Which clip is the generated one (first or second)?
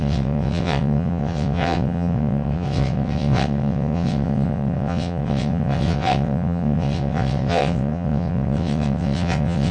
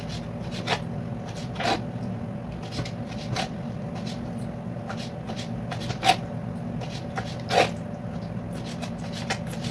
first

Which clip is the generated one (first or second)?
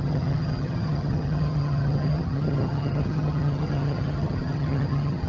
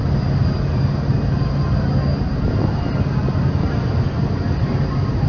first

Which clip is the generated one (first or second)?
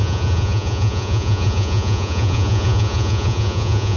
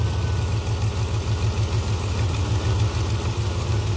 first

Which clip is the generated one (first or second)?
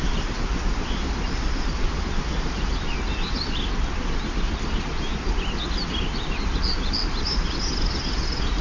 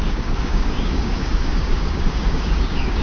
second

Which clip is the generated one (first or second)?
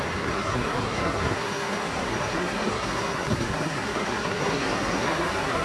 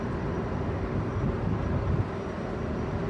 first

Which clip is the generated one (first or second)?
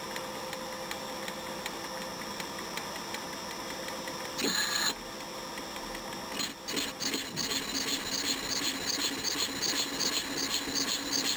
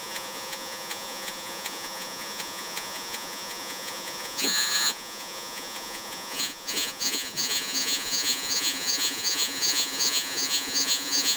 second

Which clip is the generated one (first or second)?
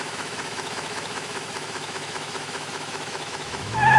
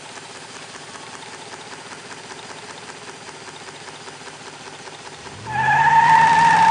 first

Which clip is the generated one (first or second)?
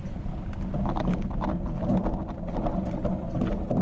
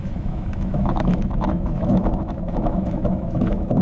second